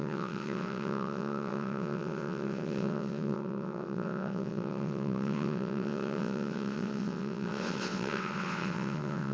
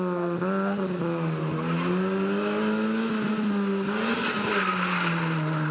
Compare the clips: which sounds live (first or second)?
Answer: second